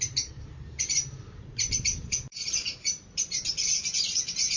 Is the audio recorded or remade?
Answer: remade